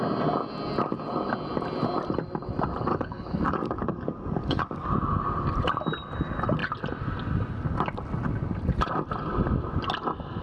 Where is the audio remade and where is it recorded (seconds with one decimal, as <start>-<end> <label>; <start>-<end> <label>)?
0.0-2.9 recorded; 2.9-4.9 remade; 4.9-10.4 recorded